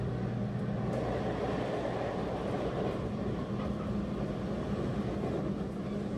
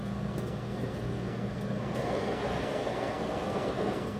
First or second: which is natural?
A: first